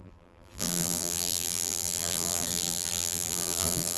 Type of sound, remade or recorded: remade